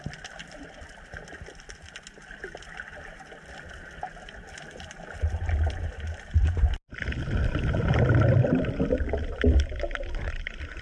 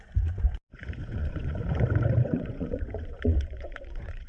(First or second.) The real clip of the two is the first